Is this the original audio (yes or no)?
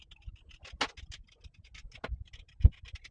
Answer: yes